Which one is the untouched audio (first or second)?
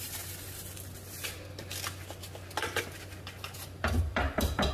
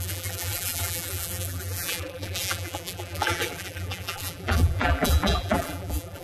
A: first